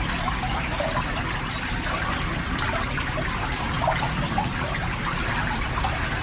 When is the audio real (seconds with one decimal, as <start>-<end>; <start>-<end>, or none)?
0.0-6.2